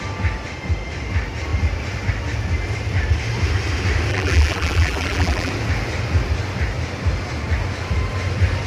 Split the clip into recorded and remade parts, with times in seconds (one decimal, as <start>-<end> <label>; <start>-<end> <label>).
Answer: 0.0-4.1 recorded; 4.1-5.5 remade; 5.5-8.7 recorded